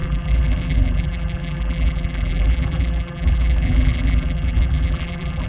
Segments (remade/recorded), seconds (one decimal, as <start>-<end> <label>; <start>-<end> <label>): 0.0-5.5 remade